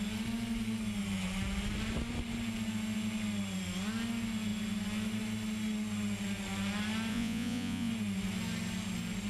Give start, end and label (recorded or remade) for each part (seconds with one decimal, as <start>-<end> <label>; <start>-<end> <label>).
0.0-7.1 recorded; 7.1-7.9 remade; 7.9-9.3 recorded